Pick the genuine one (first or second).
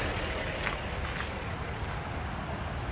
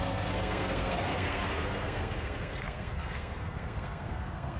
first